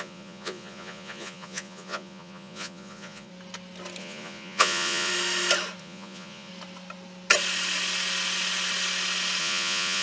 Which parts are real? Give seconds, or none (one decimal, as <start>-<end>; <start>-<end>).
3.3-4.0; 5.1-5.8; 6.5-9.4